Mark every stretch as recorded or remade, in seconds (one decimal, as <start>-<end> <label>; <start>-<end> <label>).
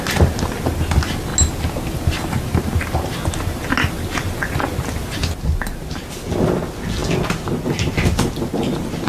0.0-9.1 recorded